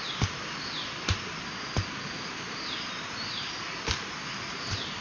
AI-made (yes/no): no